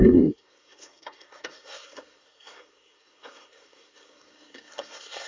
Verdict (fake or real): fake